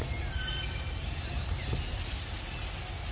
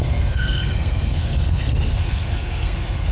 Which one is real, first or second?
first